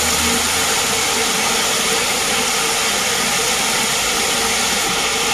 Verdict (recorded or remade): recorded